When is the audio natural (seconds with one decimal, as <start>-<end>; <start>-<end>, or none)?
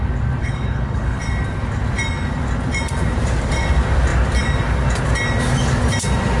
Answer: 0.0-0.4; 1.2-6.4